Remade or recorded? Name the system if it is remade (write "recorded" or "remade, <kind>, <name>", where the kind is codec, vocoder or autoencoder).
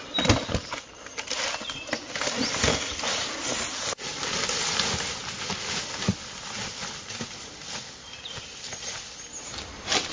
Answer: recorded